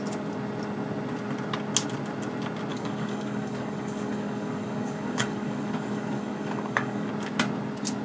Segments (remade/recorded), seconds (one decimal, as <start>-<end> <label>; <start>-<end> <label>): 0.0-2.7 recorded; 2.7-7.1 remade; 7.1-8.0 recorded